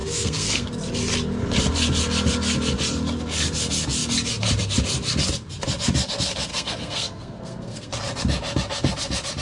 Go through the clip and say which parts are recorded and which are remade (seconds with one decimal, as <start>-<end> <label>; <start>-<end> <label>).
0.0-0.7 remade; 0.7-6.5 recorded; 6.5-7.9 remade; 7.9-9.4 recorded